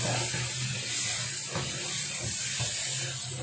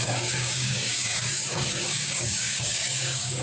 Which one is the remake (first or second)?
second